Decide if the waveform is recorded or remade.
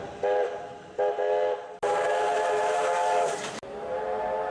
recorded